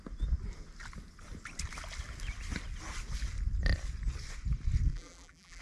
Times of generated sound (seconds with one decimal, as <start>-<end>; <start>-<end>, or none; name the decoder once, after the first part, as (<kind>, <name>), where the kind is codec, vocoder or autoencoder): 4.9-5.6 (vocoder, BigVGAN v2)